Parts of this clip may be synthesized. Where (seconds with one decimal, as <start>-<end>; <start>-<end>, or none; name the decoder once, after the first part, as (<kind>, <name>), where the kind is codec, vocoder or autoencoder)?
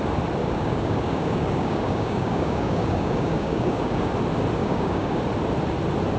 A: 0.4-4.1 (codec, DAC); 4.6-5.2